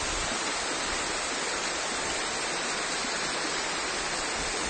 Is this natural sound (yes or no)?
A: yes